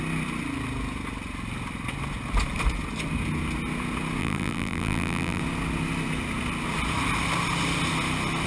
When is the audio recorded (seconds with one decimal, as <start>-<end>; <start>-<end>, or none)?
0.0-4.2; 5.4-8.5